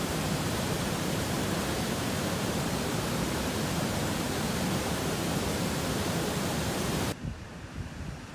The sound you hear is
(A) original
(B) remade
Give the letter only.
B